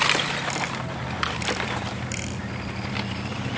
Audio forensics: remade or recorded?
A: remade